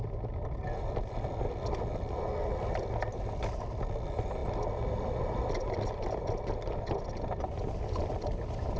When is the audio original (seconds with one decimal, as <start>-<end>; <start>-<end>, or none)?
0.0-8.8